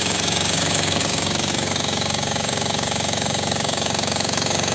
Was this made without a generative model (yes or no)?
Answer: no